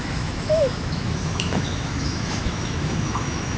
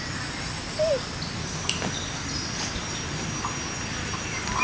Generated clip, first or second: first